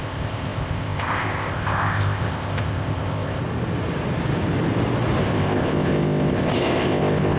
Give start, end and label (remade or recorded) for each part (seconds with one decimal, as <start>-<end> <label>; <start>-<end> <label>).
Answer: 0.0-3.4 remade; 3.4-5.2 recorded; 5.2-7.4 remade